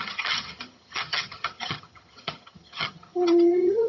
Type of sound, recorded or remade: remade